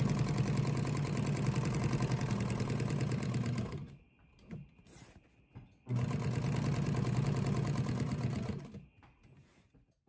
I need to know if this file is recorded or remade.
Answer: recorded